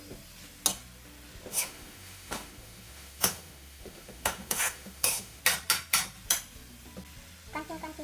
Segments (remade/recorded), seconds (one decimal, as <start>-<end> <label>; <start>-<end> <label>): 0.0-1.5 recorded; 1.5-5.4 remade; 5.4-8.0 recorded